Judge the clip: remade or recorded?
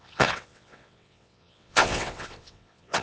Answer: remade